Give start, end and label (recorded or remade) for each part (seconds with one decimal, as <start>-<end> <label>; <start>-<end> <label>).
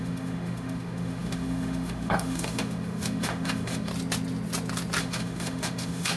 0.0-3.9 remade; 3.9-5.0 recorded; 5.0-6.2 remade